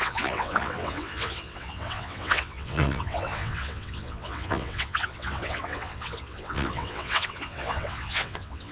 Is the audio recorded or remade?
remade